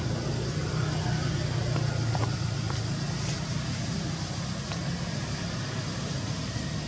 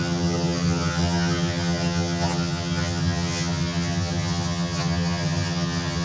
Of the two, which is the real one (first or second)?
first